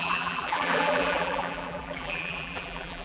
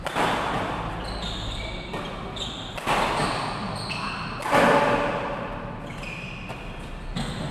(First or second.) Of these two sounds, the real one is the second